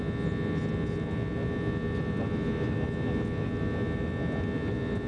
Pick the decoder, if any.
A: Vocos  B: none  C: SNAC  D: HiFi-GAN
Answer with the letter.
B